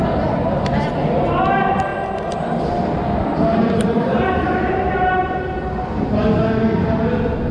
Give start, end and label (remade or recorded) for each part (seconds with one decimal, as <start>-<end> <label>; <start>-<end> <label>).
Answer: 0.0-3.5 recorded; 3.5-5.2 remade; 5.2-7.5 recorded